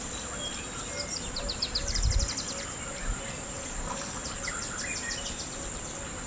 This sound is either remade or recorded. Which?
recorded